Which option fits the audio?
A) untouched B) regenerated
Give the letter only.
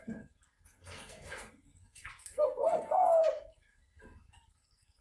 B